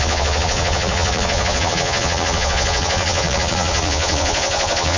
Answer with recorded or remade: remade